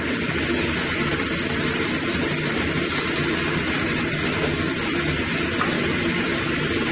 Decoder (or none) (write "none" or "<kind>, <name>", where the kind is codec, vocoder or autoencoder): none